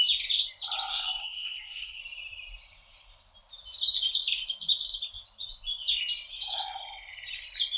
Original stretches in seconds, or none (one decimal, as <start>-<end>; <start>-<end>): 0.0-0.9; 2.0-7.8